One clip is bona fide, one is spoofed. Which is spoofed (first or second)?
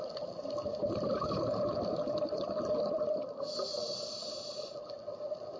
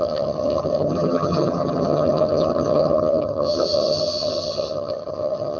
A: second